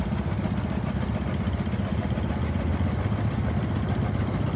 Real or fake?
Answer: real